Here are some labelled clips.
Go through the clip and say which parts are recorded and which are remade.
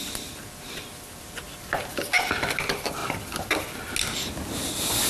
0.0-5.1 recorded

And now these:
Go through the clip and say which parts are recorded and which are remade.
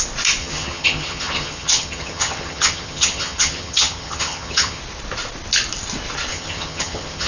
0.0-0.4 recorded; 0.4-4.8 remade; 4.8-6.3 recorded; 6.3-7.3 remade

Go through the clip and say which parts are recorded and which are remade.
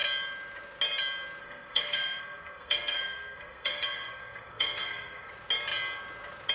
0.0-1.4 recorded; 1.4-5.3 remade; 5.3-6.5 recorded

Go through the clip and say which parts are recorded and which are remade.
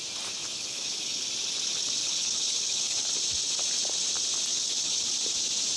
0.0-0.4 recorded; 0.4-1.3 remade; 1.3-2.0 recorded; 2.0-3.1 remade; 3.1-4.5 recorded; 4.5-5.0 remade; 5.0-5.8 recorded